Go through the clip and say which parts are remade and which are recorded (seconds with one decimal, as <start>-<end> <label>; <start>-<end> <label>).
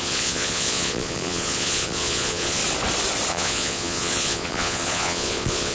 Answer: 0.0-2.6 remade; 2.6-3.3 recorded; 3.3-5.7 remade